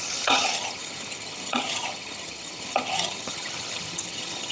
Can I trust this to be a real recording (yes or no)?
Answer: no